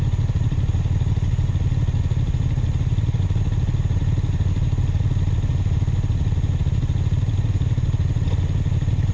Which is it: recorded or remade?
recorded